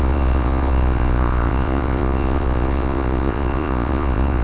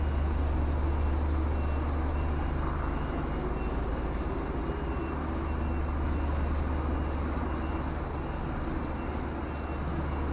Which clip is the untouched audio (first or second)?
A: second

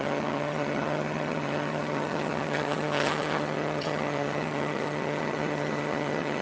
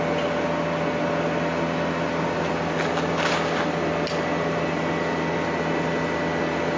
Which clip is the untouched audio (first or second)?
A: second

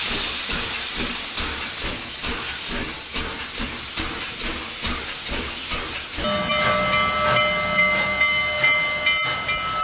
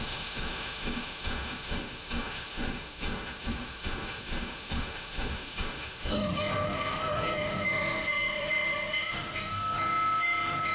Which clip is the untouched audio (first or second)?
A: first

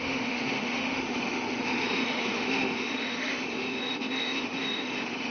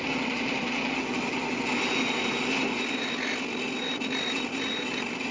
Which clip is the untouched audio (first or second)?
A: second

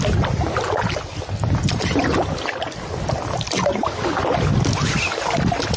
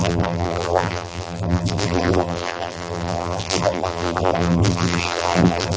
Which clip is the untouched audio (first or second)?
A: first